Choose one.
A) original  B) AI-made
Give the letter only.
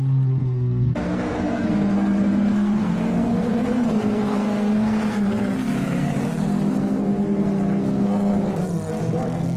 B